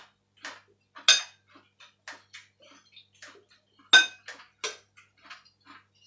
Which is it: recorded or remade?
recorded